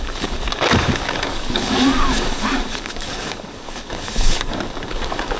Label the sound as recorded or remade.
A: remade